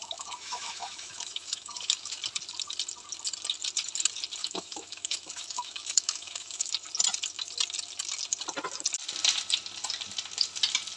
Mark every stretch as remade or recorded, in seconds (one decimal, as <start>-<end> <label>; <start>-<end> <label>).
0.0-2.2 remade; 2.2-4.4 recorded; 4.4-6.7 remade; 6.7-11.0 recorded